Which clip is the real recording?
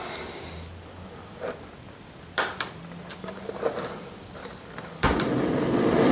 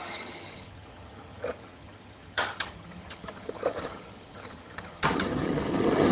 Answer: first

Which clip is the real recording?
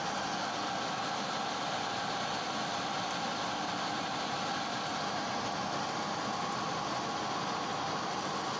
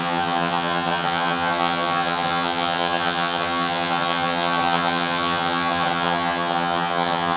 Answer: first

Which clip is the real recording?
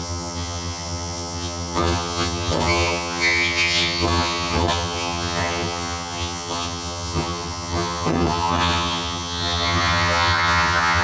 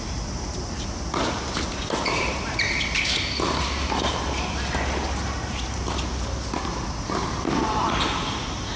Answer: second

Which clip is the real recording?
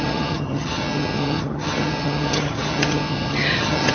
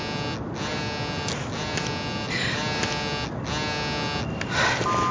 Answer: second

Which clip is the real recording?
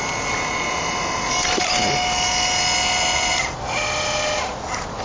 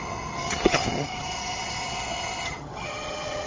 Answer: first